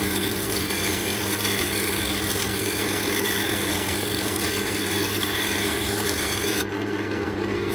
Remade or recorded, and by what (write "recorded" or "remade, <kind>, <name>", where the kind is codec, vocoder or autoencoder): remade, codec, SNAC